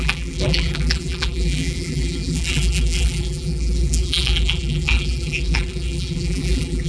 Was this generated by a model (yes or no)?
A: yes